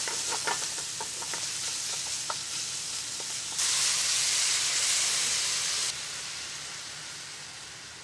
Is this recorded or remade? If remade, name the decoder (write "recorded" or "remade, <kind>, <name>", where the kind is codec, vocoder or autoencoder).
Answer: recorded